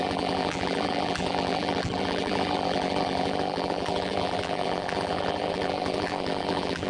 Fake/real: fake